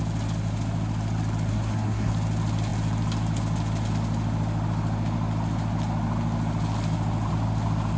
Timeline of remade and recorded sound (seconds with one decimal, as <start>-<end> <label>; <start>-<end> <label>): 0.0-1.5 recorded; 1.5-2.1 remade; 2.1-8.0 recorded